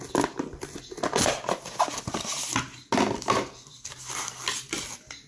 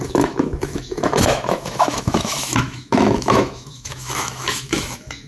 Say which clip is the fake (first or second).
second